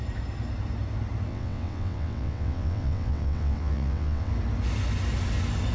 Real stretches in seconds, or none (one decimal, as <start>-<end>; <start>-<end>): 0.0-1.3; 4.3-5.7